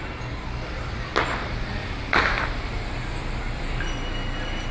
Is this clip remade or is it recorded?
recorded